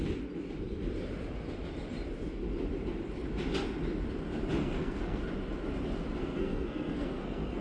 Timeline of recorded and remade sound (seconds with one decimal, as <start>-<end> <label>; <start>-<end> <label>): 0.0-4.6 recorded; 4.6-5.2 remade; 5.2-6.2 recorded; 6.2-7.6 remade